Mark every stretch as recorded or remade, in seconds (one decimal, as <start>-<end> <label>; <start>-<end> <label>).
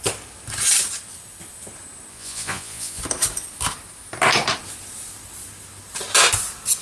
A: 0.0-2.1 recorded; 2.1-3.0 remade; 3.0-6.8 recorded